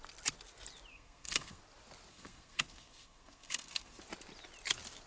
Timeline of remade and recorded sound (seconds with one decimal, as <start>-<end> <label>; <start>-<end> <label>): 0.0-0.9 recorded; 0.9-1.6 remade; 1.6-2.1 recorded; 2.1-4.0 remade; 4.0-5.1 recorded